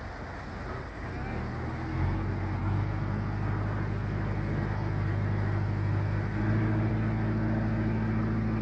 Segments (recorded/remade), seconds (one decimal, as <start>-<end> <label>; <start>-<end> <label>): 0.0-8.6 recorded